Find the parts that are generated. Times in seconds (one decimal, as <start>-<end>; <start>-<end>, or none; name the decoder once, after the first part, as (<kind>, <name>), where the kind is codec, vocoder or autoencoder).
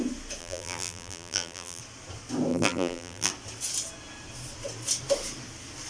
0.4-1.8 (vocoder, BigVGAN v2); 2.5-3.3